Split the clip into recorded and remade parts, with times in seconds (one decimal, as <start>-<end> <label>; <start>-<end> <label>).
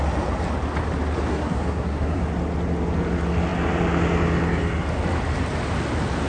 0.0-1.3 recorded; 1.3-2.2 remade; 2.2-6.3 recorded